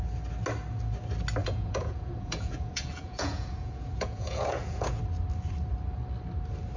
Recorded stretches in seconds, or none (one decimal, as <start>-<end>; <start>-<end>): 0.0-1.4; 5.0-6.8